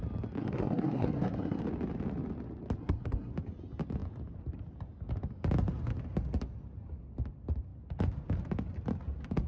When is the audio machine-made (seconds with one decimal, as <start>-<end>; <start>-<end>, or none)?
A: 0.4-1.6; 2.8-3.3